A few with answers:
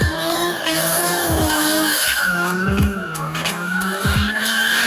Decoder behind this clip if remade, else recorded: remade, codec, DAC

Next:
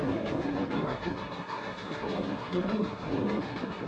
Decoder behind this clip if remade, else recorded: remade, codec, SNAC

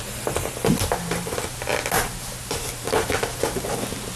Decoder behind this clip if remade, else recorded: recorded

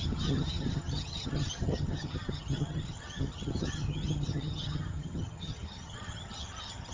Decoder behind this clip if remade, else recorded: remade, vocoder, HiFi-GAN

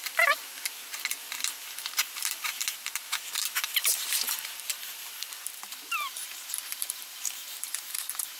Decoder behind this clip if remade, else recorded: remade, vocoder, BigVGAN v2